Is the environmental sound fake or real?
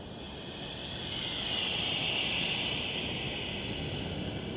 real